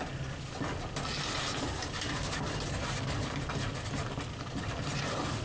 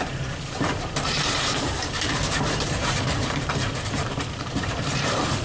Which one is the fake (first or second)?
second